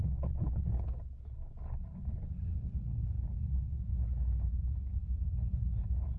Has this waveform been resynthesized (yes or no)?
yes